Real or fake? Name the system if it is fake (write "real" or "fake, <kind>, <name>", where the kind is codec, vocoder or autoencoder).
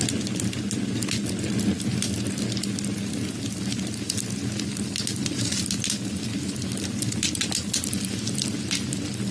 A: real